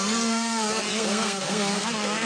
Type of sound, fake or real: fake